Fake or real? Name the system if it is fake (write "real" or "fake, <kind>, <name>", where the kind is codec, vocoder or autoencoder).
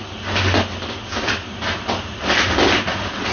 real